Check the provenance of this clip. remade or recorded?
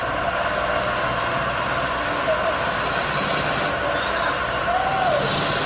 recorded